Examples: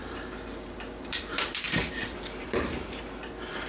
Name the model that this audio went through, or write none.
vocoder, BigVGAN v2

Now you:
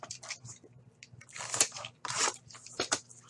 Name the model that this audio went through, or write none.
vocoder, BigVGAN v2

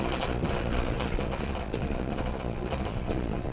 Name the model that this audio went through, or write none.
vocoder, Vocos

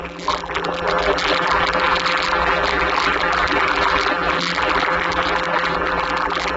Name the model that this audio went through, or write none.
vocoder, BigVGAN v2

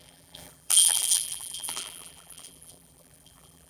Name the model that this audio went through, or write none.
vocoder, BigVGAN v2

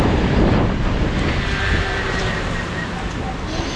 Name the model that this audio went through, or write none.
none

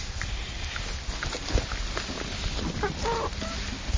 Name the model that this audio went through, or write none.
none